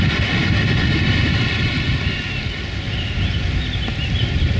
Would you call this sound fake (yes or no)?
no